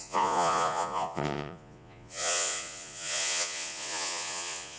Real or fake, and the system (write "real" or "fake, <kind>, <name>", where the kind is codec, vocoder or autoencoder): fake, vocoder, Vocos